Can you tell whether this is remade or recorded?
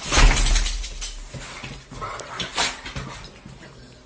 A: recorded